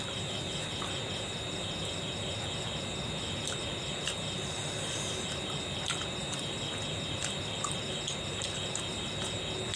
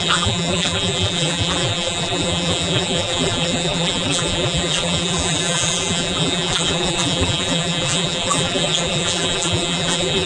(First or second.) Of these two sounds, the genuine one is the first